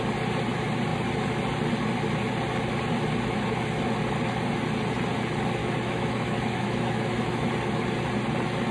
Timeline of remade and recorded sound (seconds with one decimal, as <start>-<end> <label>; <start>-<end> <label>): 0.0-5.6 recorded; 5.6-7.5 remade; 7.5-8.7 recorded